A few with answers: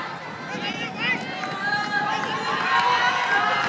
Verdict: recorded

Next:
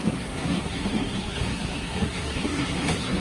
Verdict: remade